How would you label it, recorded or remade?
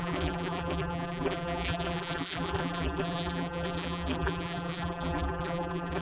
remade